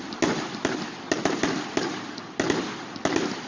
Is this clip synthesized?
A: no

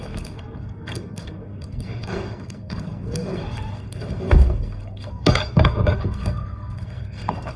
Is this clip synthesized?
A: yes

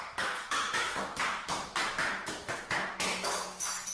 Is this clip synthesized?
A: yes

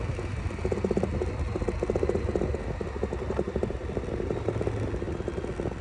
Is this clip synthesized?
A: no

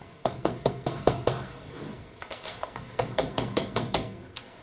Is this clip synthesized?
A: yes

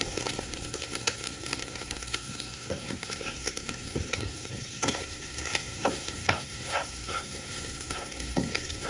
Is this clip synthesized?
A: yes